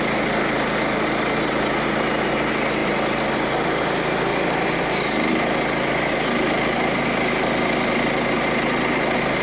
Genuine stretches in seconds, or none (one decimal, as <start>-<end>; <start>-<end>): 0.0-2.8; 3.5-4.3; 5.4-9.4